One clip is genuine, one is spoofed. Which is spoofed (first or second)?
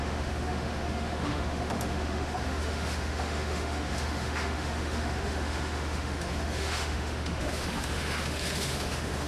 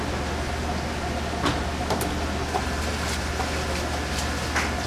first